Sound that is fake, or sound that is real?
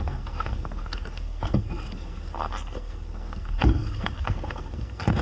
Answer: fake